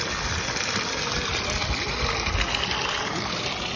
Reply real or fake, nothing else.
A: real